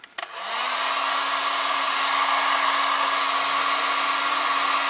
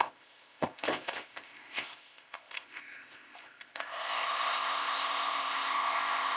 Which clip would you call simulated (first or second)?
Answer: second